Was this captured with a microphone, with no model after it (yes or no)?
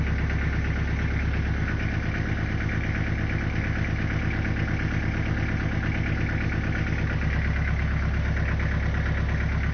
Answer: yes